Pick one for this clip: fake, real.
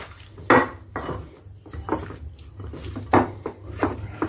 real